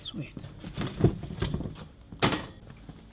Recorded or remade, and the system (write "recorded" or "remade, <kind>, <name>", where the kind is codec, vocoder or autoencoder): recorded